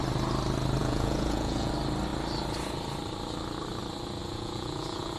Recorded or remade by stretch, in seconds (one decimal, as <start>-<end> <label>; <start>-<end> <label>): 0.0-0.8 recorded; 0.8-1.7 remade; 1.7-4.2 recorded; 4.2-5.2 remade